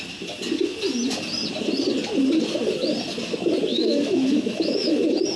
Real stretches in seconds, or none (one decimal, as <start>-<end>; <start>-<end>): 0.0-3.7; 4.9-5.4